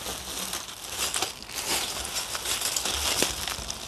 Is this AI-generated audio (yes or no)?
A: no